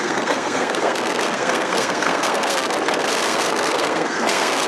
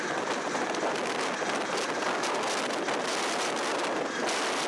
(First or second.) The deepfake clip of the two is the first